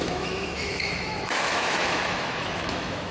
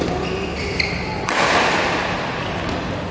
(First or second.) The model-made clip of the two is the first